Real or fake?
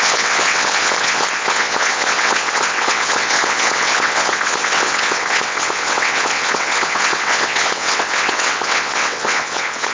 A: fake